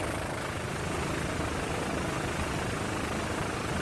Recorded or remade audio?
recorded